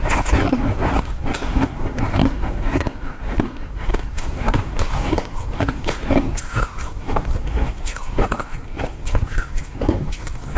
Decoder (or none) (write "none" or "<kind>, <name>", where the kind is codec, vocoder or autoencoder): codec, SNAC